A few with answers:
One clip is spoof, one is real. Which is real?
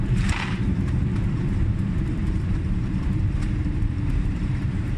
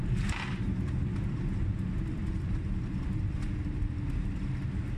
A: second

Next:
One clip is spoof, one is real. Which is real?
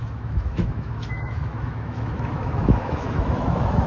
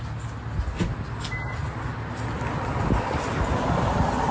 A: second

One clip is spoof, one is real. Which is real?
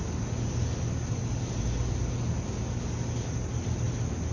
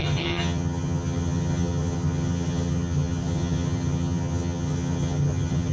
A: first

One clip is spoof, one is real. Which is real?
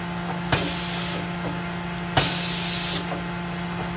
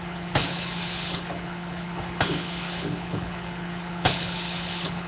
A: first